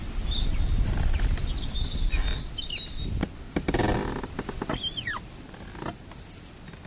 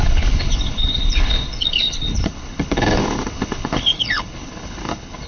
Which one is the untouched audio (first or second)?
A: first